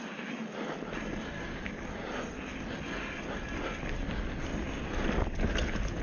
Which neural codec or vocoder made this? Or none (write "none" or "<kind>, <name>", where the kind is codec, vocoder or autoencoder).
none